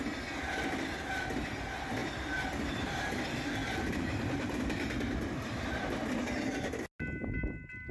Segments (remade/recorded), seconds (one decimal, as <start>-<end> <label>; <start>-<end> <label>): 0.0-2.0 recorded; 2.0-2.8 remade; 2.8-7.9 recorded